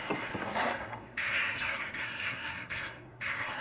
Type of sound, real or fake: fake